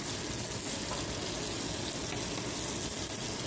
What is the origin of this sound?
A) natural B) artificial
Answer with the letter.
A